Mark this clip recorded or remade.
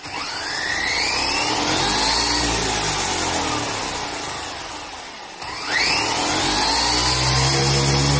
recorded